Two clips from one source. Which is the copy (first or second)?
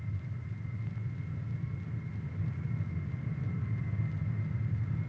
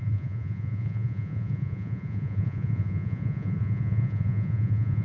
second